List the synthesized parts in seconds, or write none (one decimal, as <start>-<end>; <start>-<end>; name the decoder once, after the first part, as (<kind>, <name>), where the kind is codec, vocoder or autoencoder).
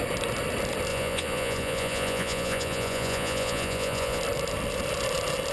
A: 0.9-4.2 (vocoder, Vocos)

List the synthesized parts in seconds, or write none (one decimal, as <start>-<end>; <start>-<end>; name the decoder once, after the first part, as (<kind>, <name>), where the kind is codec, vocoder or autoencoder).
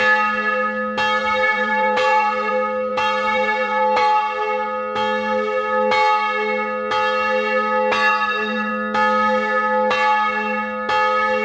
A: 1.2-2.5 (vocoder, BigVGAN v2); 2.9-4.2; 8.1-8.7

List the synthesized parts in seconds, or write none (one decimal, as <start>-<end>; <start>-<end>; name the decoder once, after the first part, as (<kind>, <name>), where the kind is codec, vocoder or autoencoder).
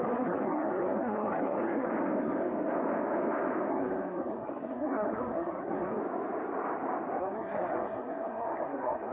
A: 0.0-1.9 (codec, SNAC); 3.7-6.0; 7.2-9.1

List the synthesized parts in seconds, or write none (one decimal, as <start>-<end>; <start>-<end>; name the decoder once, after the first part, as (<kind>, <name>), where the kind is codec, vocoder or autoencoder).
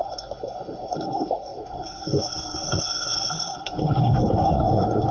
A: 0.0-5.1 (codec, SNAC)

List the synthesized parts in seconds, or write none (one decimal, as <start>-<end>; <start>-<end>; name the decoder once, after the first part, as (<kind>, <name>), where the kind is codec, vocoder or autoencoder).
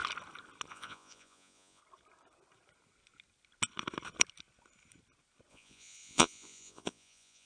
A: 0.7-1.8 (vocoder, Vocos); 5.5-7.5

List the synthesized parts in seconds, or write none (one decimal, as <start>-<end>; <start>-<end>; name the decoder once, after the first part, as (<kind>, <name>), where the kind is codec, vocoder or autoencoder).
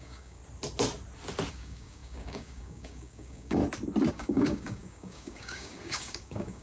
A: 0.0-0.4 (codec, DAC); 1.5-3.6; 4.1-6.6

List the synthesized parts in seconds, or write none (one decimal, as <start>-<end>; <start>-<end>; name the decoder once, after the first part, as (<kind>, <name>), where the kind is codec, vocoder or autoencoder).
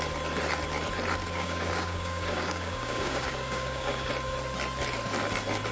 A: 1.2-4.1 (codec, DAC)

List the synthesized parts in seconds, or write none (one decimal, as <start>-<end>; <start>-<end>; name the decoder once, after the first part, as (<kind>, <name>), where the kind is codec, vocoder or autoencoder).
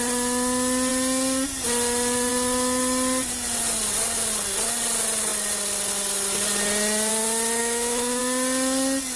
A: 7.6-8.2 (autoencoder, DAC-VAE)